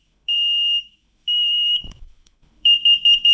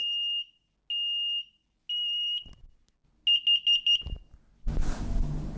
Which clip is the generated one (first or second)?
first